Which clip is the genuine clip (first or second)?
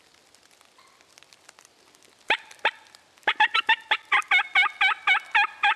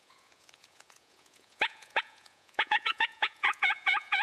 first